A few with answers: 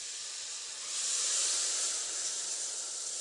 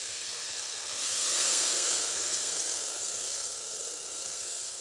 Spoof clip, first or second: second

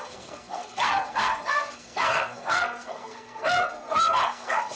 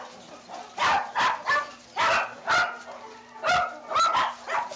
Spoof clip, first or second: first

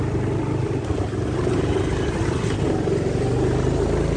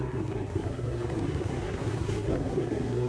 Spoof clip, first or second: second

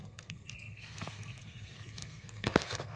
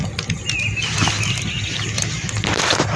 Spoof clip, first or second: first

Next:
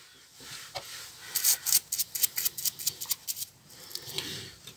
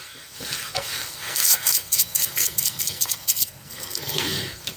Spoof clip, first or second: second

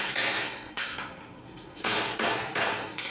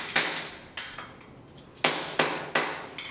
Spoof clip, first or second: first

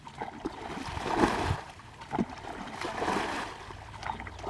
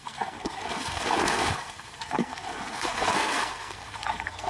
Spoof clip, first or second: second